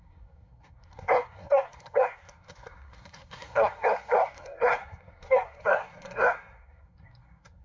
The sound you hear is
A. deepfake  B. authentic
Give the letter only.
A